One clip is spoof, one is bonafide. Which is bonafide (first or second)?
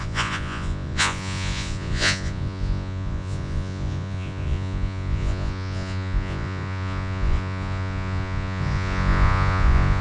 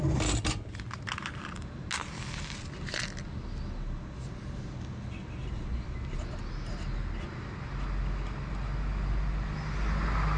second